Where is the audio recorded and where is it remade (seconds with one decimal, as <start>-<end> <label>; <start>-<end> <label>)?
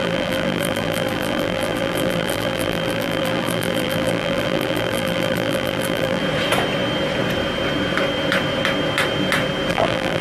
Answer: 0.0-6.2 remade; 6.2-9.7 recorded; 9.7-10.2 remade